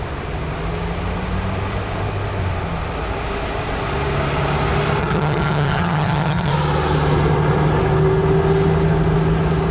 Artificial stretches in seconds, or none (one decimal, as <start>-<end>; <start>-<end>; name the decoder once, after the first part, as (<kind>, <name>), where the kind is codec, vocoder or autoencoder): 5.0-6.5 (vocoder, HiFi-GAN)